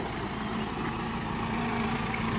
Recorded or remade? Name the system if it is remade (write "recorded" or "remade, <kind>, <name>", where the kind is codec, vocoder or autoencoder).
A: remade, vocoder, BigVGAN v2